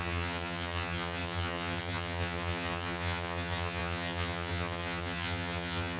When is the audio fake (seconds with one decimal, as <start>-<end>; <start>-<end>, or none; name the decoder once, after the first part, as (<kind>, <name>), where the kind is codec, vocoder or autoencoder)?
0.0-6.0 (vocoder, HiFi-GAN)